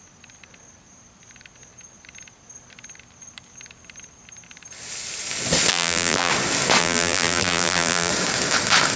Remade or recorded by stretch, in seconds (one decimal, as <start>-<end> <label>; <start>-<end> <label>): 0.0-5.7 recorded; 5.7-6.3 remade; 6.3-6.8 recorded; 6.8-8.1 remade; 8.1-9.0 recorded